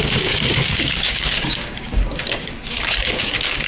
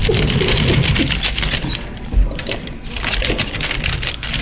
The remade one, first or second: first